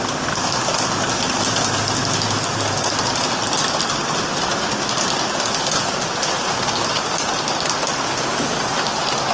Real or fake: real